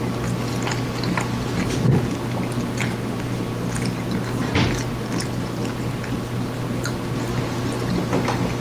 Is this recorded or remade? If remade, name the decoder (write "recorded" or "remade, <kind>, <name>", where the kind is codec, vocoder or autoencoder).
recorded